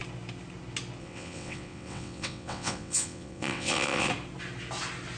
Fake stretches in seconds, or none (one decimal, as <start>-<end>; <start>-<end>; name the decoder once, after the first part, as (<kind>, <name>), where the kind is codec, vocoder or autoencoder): 1.0-4.1 (vocoder, WaveNeXt)